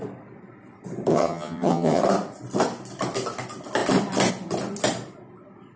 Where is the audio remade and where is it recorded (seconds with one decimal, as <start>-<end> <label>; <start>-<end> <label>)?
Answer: 0.0-1.1 recorded; 1.1-2.0 remade; 2.0-5.8 recorded